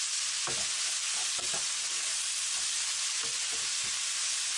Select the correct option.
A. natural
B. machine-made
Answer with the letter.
A